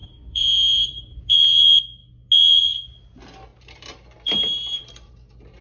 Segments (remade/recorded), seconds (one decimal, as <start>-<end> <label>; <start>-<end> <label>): 0.0-1.2 remade; 1.2-3.5 recorded; 3.5-4.8 remade; 4.8-5.6 recorded